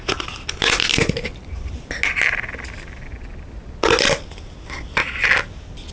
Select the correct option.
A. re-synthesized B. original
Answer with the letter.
B